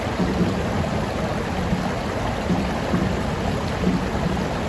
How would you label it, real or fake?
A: real